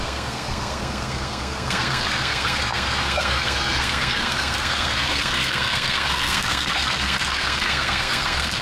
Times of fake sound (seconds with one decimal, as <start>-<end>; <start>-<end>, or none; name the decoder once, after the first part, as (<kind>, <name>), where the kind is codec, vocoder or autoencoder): 0.0-8.6 (codec, SNAC)